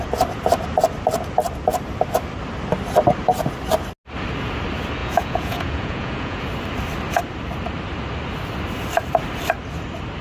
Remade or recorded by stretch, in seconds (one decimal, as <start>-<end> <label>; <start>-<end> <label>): 0.0-5.0 recorded; 5.0-6.5 remade; 6.5-10.2 recorded